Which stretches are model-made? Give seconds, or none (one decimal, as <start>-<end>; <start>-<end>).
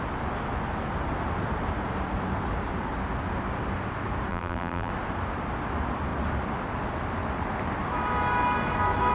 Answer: 4.3-4.9